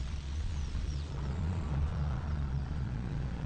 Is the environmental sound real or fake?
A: fake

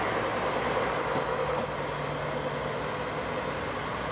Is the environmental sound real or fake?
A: real